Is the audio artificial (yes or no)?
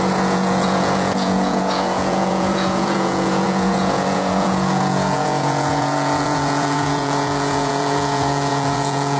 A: yes